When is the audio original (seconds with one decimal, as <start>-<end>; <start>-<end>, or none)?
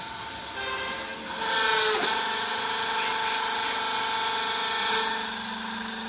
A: 0.0-6.1